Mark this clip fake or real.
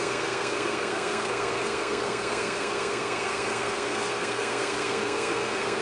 fake